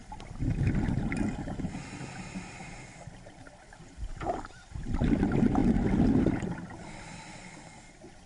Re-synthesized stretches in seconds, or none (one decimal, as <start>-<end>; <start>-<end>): none